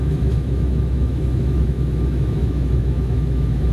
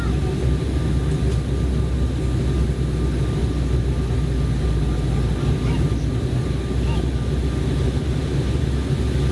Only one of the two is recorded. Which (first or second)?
second